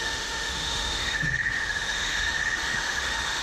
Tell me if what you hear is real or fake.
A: fake